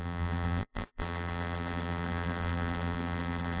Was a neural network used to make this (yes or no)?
yes